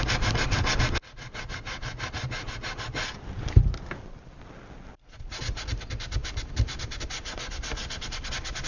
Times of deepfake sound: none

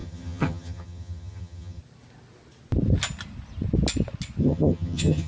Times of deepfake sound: 0.0-1.8 (vocoder, HiFi-GAN); 4.4-5.3

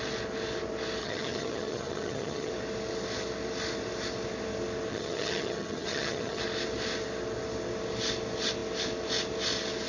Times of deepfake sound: 1.0-2.5 (vocoder, HiFi-GAN); 4.9-6.4

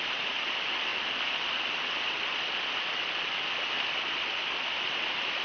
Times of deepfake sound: none

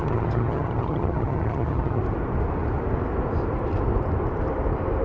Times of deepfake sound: 0.0-2.0 (vocoder, HiFi-GAN)

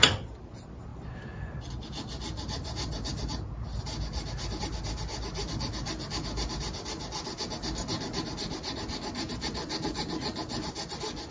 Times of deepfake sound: none

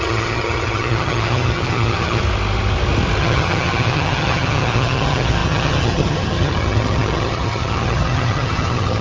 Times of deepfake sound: 0.0-2.2 (vocoder, HiFi-GAN); 3.2-9.0

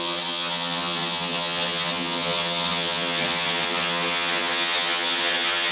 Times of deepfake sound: 0.0-5.7 (vocoder, HiFi-GAN)